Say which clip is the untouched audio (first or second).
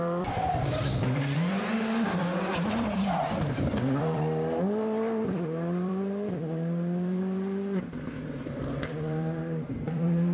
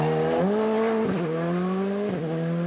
second